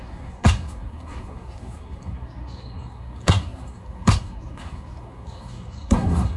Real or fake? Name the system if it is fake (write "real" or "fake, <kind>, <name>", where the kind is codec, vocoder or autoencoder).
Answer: fake, codec, SNAC